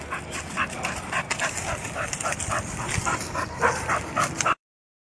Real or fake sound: fake